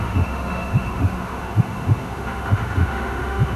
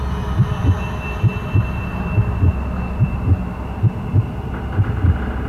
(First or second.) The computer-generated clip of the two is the first